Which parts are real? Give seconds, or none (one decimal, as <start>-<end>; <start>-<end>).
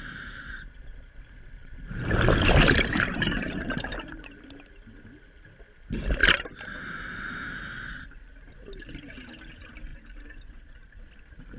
0.0-1.6; 4.3-9.9; 11.0-11.6